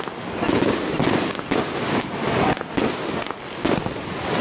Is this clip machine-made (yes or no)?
no